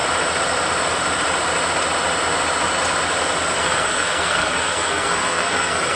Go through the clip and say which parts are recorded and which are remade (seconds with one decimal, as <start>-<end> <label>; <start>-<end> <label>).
0.0-3.6 recorded; 3.6-6.0 remade